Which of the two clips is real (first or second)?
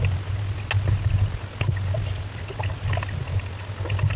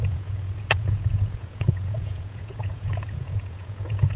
first